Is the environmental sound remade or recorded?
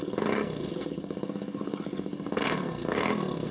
remade